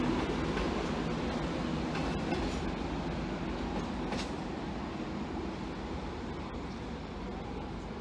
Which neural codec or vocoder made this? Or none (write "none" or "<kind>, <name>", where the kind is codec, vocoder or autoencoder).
none